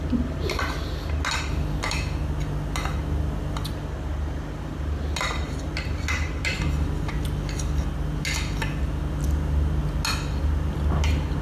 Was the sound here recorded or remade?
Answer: recorded